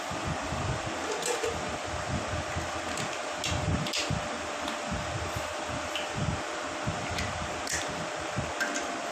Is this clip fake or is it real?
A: real